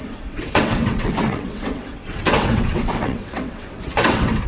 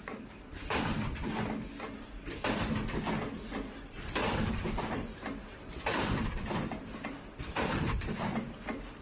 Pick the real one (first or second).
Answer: second